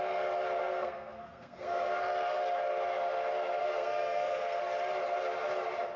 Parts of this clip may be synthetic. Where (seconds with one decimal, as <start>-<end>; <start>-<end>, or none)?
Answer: 0.6-2.0; 3.6-4.6